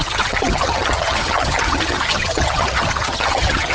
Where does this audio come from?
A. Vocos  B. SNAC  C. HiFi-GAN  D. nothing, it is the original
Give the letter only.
C